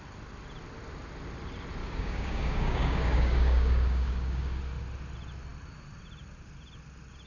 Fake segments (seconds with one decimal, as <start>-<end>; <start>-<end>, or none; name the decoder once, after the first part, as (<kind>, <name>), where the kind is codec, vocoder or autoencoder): 1.8-4.6 (codec, DAC)